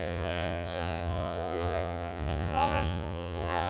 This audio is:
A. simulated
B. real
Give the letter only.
A